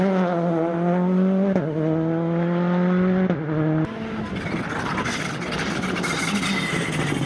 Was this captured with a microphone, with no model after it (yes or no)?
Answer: yes